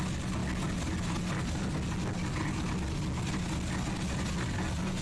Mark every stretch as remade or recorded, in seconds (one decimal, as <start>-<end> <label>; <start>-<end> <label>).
0.0-5.0 recorded